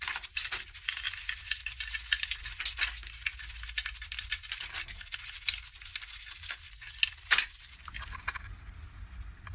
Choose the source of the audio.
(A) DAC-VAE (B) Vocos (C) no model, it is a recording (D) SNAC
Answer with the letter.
C